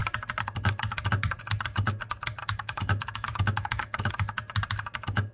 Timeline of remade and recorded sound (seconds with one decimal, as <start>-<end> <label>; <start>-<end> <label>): 0.0-2.4 recorded; 2.4-4.1 remade; 4.1-5.3 recorded

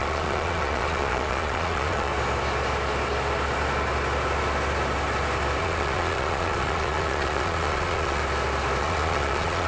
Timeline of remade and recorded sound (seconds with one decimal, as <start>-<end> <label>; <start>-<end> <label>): 0.0-2.1 remade; 2.1-5.6 recorded; 5.6-8.2 remade; 8.2-8.8 recorded; 8.8-9.7 remade

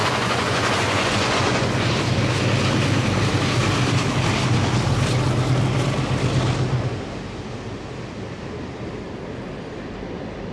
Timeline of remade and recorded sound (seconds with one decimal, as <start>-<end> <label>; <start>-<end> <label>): 0.0-1.9 remade; 1.9-10.5 recorded

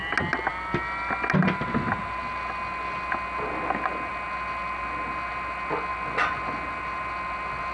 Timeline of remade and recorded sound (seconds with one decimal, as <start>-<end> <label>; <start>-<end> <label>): 0.0-7.7 recorded

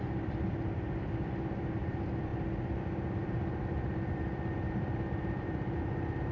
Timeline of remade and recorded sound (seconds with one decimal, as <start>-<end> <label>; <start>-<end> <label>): 0.0-6.3 remade